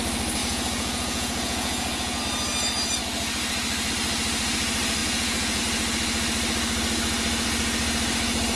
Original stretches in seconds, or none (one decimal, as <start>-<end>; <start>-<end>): 0.0-0.4; 2.2-5.0; 5.6-8.6